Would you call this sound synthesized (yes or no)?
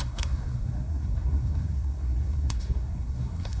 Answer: yes